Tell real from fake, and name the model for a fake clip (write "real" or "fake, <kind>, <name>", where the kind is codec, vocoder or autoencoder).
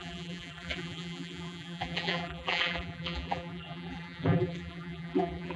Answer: fake, vocoder, BigVGAN v2